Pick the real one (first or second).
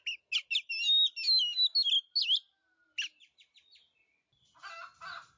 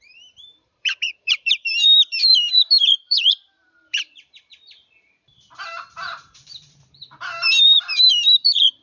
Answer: first